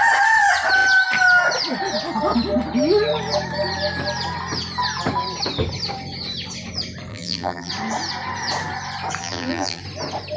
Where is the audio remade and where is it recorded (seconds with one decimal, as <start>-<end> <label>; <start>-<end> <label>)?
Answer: 0.0-7.1 recorded; 7.1-7.7 remade; 7.7-9.2 recorded; 9.2-9.8 remade; 9.8-10.4 recorded